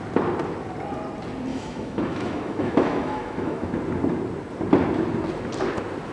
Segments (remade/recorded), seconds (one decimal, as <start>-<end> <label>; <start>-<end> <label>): 0.0-1.5 recorded; 1.5-3.7 remade; 3.7-6.1 recorded